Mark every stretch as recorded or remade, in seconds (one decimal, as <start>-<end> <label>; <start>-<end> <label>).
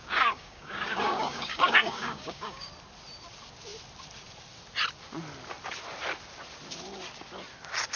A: 0.0-2.7 remade; 2.7-8.0 recorded